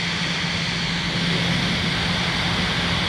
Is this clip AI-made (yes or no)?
no